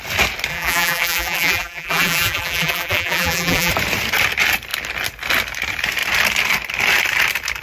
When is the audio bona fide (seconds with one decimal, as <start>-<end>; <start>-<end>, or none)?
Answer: 0.0-0.5; 3.7-7.6